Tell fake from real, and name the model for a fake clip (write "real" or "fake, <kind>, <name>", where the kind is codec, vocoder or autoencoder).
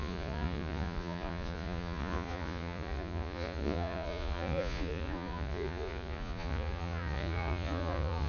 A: fake, vocoder, Vocos